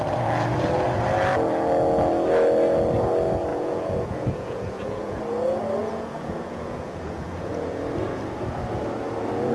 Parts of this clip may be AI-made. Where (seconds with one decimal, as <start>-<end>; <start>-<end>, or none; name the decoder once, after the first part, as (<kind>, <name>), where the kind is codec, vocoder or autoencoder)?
3.5-5.2 (vocoder, Vocos); 5.8-7.8